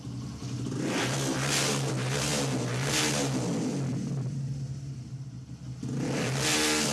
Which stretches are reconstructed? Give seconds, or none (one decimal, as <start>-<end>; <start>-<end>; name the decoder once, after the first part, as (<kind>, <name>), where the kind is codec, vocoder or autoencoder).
none